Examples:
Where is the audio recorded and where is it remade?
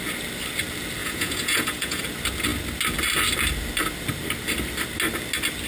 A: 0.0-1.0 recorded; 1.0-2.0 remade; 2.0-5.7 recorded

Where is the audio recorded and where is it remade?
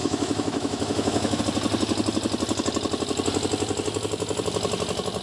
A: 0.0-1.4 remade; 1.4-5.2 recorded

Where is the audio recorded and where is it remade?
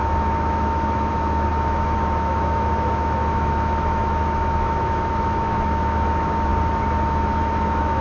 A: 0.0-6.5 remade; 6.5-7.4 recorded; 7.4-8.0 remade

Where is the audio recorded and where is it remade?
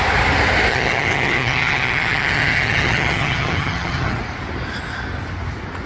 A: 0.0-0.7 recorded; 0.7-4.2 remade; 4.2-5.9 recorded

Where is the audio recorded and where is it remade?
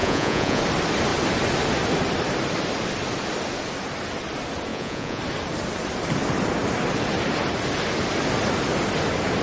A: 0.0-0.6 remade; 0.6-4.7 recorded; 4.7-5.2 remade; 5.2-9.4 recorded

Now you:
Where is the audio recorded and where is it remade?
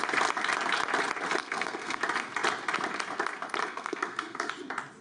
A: 0.0-1.4 recorded; 1.4-2.0 remade; 2.0-3.6 recorded; 3.6-4.5 remade; 4.5-5.0 recorded